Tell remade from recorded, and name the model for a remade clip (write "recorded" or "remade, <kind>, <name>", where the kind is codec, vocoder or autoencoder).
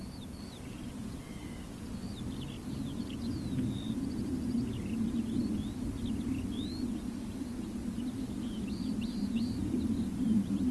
recorded